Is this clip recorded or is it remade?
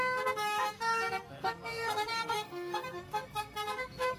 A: remade